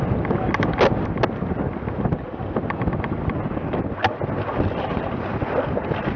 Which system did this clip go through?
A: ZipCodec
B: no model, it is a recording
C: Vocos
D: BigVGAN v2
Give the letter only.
B